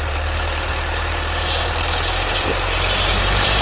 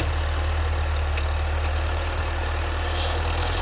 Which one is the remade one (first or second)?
first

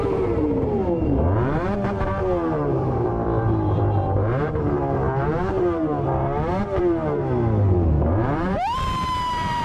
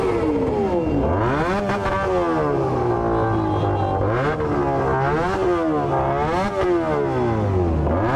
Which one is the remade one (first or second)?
first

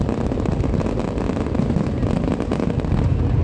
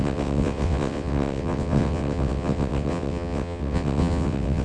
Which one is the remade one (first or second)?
second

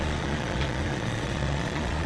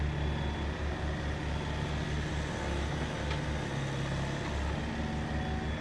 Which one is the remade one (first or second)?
first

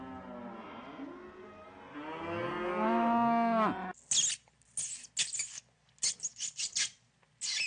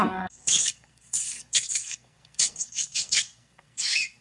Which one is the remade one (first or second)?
second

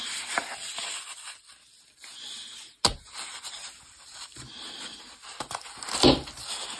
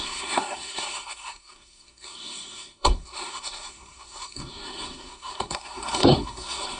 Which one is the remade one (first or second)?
second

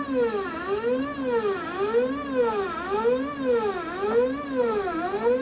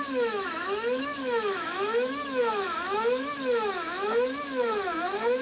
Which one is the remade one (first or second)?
second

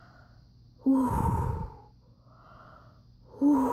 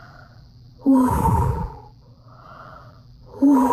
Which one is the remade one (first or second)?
second